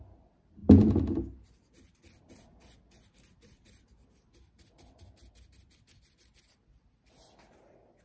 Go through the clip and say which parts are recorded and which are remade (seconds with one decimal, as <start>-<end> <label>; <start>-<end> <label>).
0.0-8.0 recorded